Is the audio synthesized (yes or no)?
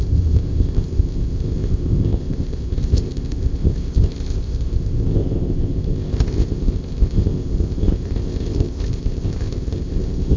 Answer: yes